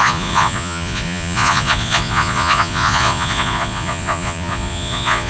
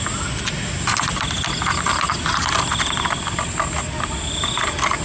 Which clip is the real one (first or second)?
second